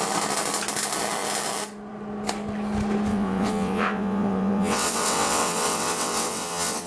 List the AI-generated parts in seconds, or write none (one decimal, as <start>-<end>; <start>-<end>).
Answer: 3.1-6.9